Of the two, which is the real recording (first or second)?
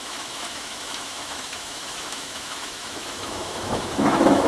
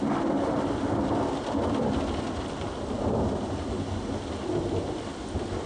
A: second